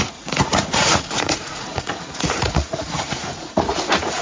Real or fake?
fake